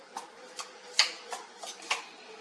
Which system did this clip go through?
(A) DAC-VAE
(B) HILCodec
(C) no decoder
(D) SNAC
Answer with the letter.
C